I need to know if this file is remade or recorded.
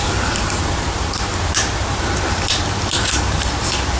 recorded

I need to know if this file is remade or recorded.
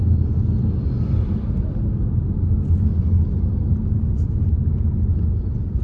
recorded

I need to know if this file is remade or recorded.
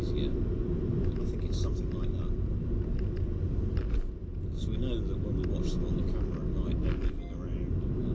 recorded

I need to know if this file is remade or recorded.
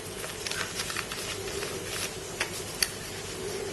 recorded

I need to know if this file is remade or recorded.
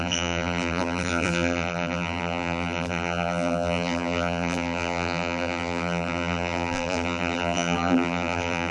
remade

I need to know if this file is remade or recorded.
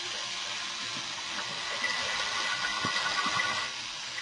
recorded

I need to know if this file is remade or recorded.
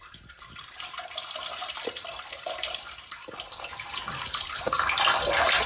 recorded